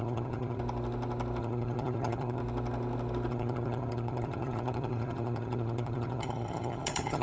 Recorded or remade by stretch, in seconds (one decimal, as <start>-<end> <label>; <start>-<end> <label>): 0.0-0.6 remade; 0.6-1.4 recorded; 1.4-2.4 remade; 2.4-3.3 recorded; 3.3-7.2 remade